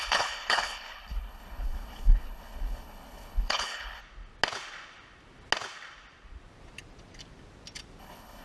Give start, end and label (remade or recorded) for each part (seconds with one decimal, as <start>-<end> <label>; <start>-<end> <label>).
0.0-4.0 remade; 4.0-8.0 recorded; 8.0-8.4 remade